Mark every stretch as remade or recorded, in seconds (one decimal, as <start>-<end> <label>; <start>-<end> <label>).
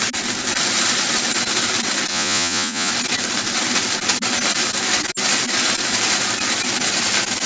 0.0-2.1 recorded; 2.1-2.9 remade; 2.9-7.5 recorded